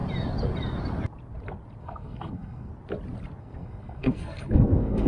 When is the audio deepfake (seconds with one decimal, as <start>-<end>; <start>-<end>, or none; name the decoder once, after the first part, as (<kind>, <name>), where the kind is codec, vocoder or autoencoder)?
1.8-2.7 (codec, SNAC); 3.4-5.1